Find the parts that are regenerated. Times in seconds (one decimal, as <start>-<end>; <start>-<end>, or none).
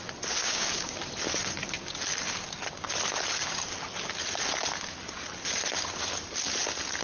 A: 0.4-1.0